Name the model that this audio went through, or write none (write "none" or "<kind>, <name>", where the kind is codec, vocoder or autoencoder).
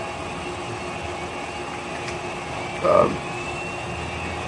none